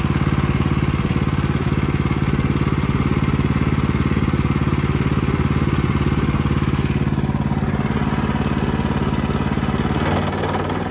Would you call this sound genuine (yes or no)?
yes